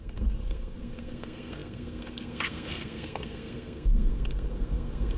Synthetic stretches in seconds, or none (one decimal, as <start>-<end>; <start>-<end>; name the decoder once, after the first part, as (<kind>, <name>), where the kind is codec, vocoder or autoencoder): 0.0-5.2 (codec, SNAC)